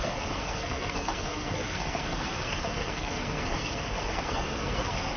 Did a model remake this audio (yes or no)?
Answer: yes